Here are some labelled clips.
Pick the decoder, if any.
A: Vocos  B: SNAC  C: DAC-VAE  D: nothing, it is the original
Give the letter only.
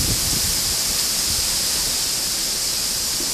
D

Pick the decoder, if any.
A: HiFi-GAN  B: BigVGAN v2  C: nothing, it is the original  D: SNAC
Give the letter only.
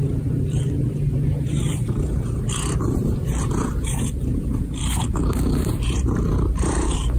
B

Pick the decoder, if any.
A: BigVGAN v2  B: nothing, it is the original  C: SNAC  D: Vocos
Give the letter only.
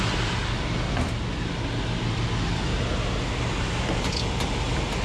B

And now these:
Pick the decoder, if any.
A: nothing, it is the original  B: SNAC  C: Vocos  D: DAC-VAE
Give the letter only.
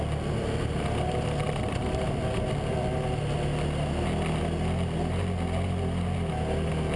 A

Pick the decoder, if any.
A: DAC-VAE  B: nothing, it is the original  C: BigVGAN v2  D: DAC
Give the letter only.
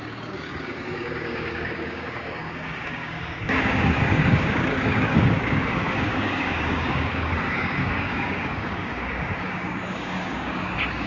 D